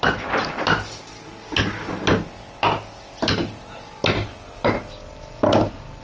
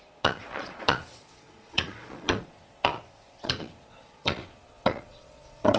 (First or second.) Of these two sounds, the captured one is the first